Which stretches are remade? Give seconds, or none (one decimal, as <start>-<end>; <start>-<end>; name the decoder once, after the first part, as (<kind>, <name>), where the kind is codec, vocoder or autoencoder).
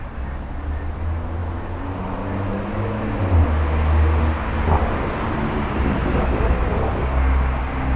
none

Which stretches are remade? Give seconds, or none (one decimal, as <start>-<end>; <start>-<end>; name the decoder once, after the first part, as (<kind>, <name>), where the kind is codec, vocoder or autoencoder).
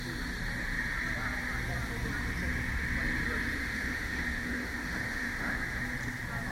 3.6-5.8 (autoencoder, DAC-VAE)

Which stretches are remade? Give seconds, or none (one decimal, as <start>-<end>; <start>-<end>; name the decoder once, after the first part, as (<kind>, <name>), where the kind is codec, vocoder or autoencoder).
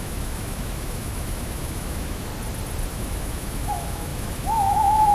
0.0-2.3 (autoencoder, DAC-VAE); 2.9-5.1